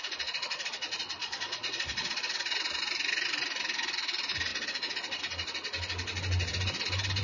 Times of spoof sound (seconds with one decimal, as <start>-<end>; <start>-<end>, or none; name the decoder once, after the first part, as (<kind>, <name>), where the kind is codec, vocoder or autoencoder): 1.2-2.8 (vocoder, Vocos)